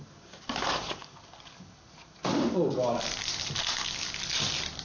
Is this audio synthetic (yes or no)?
no